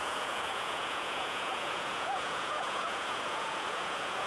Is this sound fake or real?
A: fake